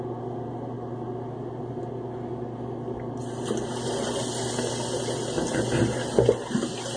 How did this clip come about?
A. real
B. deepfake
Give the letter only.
A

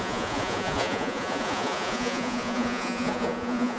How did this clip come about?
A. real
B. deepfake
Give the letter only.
B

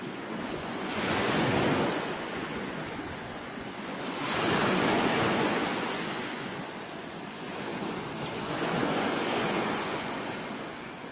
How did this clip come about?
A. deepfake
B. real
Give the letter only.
A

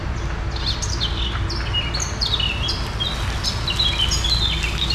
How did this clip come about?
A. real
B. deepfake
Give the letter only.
A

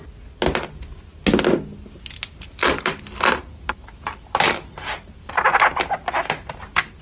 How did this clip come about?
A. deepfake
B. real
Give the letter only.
B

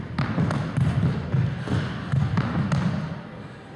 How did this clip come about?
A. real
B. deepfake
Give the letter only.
A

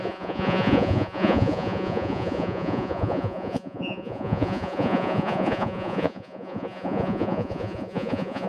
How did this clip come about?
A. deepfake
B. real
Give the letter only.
A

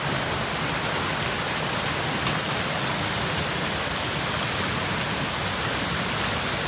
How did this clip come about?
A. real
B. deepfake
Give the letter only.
A